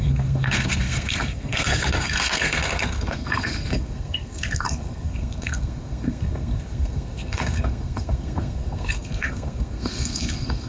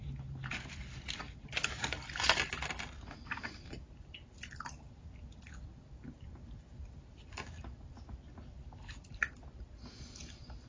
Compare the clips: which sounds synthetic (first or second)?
first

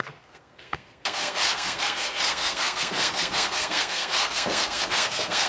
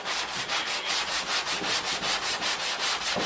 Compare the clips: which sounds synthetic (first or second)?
first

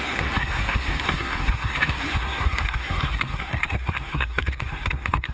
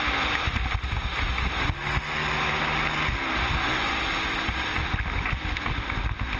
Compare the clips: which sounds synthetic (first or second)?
first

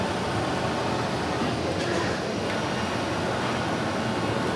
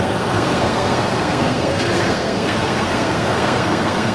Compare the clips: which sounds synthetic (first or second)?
second